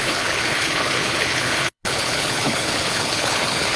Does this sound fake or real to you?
fake